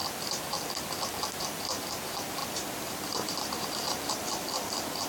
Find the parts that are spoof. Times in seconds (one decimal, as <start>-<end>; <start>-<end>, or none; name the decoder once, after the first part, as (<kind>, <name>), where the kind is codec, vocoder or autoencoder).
1.2-5.1 (vocoder, BigVGAN v2)